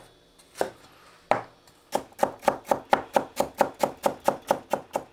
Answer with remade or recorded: recorded